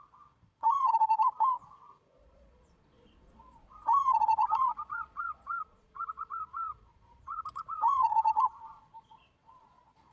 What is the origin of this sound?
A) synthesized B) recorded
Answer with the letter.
A